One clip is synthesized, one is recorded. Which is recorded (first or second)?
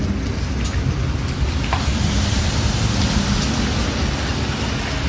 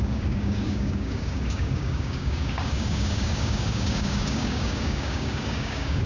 first